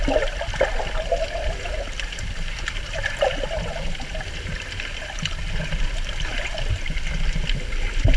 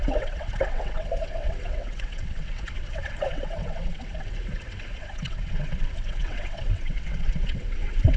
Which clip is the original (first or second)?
first